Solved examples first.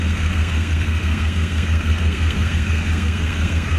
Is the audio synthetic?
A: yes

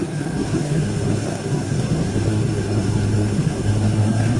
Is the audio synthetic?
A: yes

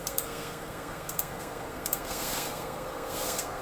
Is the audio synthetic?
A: yes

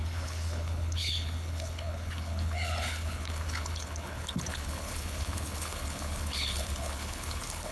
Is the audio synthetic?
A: yes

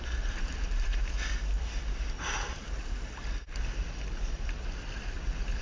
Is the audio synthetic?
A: no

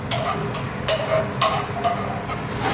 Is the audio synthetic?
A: no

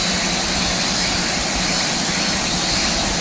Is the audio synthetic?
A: no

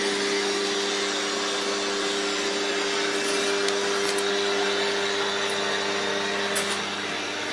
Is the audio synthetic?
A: no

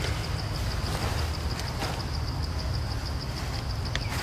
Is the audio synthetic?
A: no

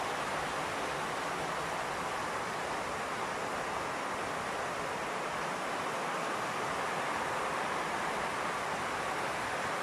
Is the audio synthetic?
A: no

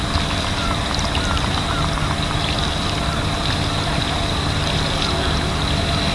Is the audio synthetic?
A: no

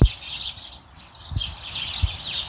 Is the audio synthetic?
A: no